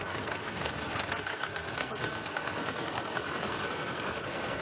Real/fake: fake